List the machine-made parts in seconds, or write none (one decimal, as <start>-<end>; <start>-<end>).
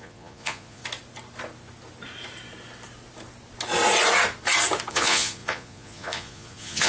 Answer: 0.0-0.8; 4.9-6.9